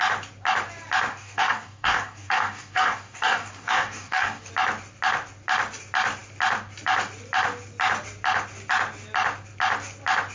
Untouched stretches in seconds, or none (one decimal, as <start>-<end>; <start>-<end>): 0.0-1.1; 4.5-10.3